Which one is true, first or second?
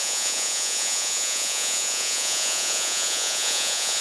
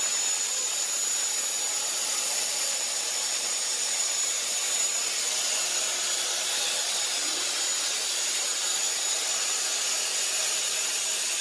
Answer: second